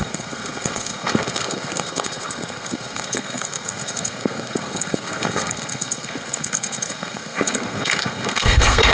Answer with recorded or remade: remade